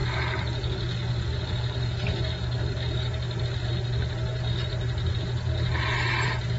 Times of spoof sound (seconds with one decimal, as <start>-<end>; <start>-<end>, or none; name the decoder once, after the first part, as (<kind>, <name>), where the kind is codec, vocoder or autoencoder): none